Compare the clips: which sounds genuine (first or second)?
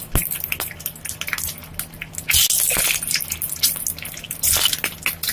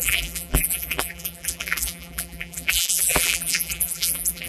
first